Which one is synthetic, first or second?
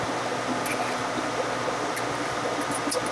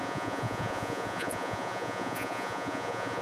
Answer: second